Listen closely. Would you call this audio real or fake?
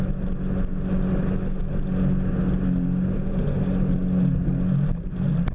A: real